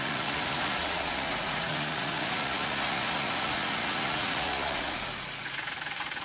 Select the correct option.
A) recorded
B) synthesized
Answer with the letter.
B